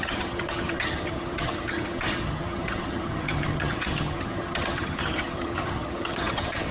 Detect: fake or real fake